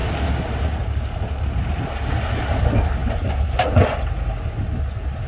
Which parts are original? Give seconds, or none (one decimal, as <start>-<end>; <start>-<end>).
0.0-5.3